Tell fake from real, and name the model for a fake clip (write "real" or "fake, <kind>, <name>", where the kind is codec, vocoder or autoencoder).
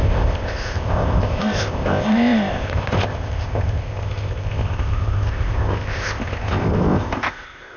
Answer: fake, codec, ZipCodec